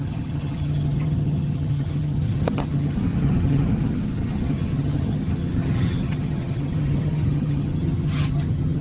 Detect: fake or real fake